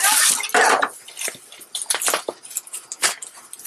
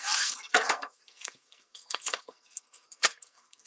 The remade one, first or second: second